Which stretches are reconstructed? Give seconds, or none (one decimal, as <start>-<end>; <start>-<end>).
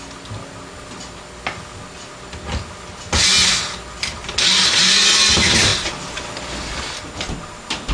5.7-6.3